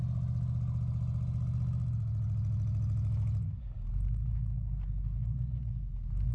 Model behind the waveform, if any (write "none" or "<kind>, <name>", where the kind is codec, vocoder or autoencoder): none